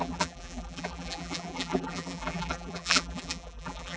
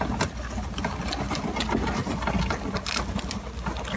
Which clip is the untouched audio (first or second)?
second